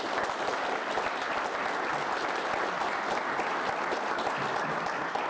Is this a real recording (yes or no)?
yes